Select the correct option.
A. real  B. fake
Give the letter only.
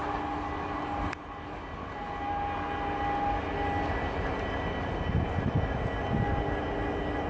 A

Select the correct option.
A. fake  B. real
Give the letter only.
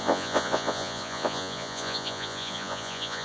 A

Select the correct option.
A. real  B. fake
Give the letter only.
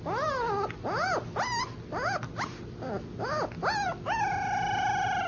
A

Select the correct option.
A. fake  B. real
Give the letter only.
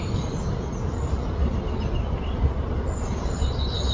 B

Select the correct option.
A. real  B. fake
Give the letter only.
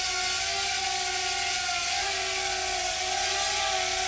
A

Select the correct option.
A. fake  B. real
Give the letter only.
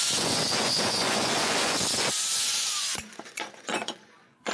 A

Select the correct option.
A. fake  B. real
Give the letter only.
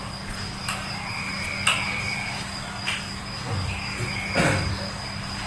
B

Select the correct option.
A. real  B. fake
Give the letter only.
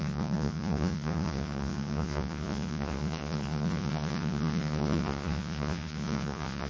B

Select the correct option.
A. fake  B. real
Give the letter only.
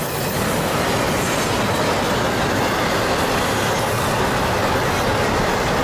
B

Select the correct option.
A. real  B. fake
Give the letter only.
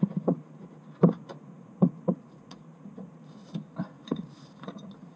B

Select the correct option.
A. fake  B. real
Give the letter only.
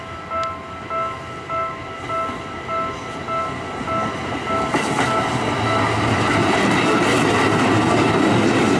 B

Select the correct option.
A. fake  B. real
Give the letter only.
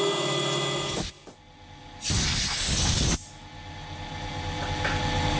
B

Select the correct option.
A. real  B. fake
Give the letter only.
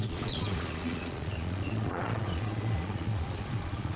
B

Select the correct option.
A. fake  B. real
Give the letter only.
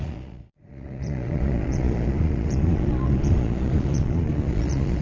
A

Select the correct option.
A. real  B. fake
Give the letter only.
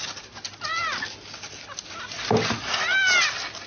A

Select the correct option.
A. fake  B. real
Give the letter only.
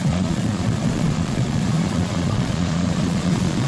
A